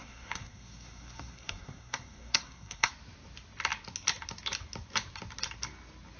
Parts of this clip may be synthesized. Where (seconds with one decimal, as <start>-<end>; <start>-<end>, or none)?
0.0-2.9

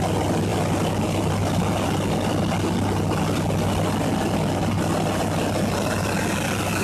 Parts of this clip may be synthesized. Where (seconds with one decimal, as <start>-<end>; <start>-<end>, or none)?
none

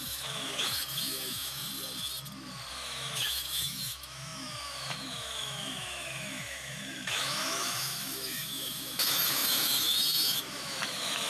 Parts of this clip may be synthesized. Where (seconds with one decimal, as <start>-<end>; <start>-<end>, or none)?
0.0-1.6; 2.7-11.3

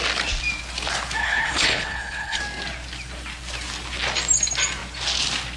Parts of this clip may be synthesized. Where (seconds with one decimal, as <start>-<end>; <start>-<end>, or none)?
1.2-2.4